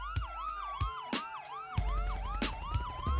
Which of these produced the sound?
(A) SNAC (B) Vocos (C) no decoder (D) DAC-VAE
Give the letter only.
C